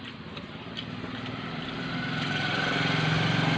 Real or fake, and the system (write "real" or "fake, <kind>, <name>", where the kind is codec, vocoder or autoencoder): real